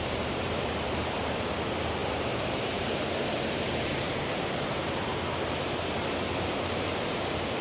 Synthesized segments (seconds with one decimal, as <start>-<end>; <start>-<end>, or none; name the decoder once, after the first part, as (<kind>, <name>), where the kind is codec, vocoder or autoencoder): 0.0-7.6 (vocoder, BigVGAN v2)